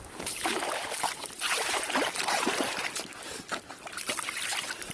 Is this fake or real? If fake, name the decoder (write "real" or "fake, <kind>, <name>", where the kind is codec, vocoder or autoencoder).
fake, vocoder, BigVGAN v2